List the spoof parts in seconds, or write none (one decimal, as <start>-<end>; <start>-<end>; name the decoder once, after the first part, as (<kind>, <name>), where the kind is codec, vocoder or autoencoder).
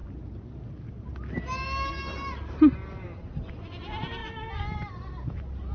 none